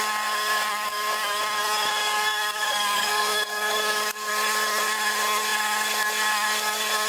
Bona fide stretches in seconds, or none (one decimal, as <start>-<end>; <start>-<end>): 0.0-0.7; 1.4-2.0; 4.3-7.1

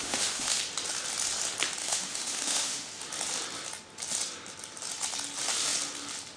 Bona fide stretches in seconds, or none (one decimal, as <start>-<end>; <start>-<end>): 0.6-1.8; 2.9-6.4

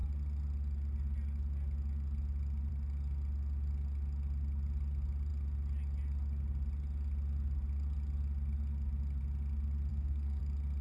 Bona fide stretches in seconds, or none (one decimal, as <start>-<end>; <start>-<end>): 0.0-9.9; 10.4-10.8